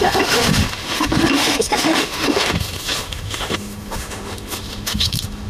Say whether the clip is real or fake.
fake